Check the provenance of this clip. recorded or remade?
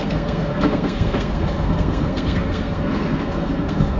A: remade